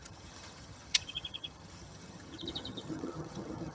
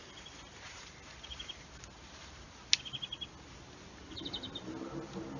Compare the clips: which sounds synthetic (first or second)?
first